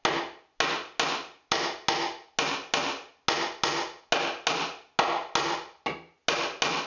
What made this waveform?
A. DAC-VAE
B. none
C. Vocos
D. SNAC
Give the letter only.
B